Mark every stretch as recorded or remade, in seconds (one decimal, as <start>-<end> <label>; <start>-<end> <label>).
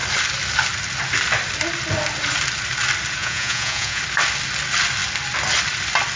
0.0-3.2 recorded; 3.2-4.0 remade; 4.0-6.2 recorded